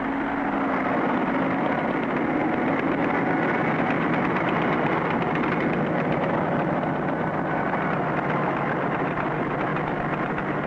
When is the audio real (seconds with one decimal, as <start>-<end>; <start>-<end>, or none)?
0.0-10.7